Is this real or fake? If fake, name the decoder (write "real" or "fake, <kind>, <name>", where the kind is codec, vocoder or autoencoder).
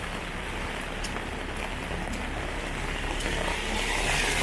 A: real